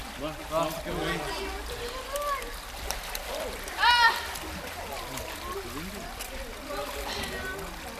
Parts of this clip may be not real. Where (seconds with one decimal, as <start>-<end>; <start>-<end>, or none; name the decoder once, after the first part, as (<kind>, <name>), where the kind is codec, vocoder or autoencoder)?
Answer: none